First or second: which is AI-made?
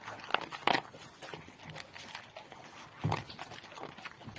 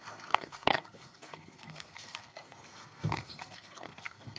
second